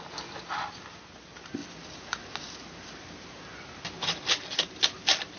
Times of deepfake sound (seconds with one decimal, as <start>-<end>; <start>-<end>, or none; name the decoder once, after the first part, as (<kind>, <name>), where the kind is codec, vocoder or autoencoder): none